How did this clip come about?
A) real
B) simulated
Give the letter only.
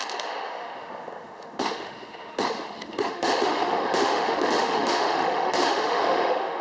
B